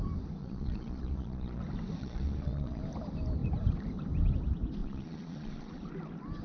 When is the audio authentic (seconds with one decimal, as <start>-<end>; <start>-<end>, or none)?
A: 0.0-0.4; 1.6-2.0; 2.8-4.8; 5.7-6.4